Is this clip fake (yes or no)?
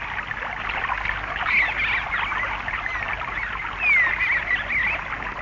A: no